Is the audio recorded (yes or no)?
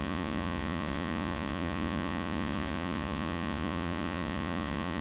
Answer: no